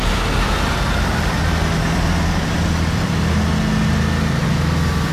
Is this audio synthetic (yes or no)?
no